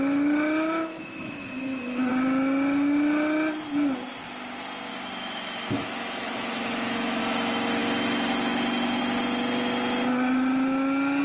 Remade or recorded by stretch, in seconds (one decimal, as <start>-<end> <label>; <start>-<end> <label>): 0.0-0.9 recorded; 0.9-2.1 remade; 2.1-4.9 recorded; 4.9-7.2 remade; 7.2-11.2 recorded